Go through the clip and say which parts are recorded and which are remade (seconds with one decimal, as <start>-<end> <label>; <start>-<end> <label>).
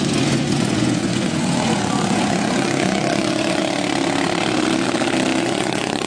0.0-3.6 remade; 3.6-5.4 recorded; 5.4-6.1 remade